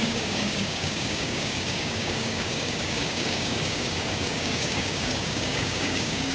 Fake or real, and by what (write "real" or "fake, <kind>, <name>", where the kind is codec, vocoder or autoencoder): fake, codec, DAC